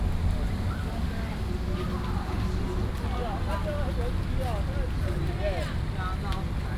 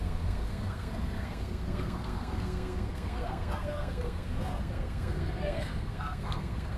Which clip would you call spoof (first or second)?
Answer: second